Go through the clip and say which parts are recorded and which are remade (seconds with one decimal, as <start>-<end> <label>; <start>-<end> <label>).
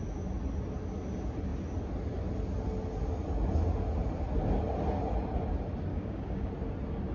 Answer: 0.0-5.9 recorded; 5.9-6.5 remade; 6.5-7.1 recorded